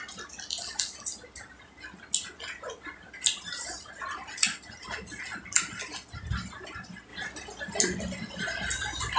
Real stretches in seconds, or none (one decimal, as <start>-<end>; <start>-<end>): 0.0-9.2